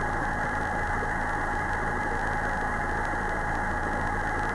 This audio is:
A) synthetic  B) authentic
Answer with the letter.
B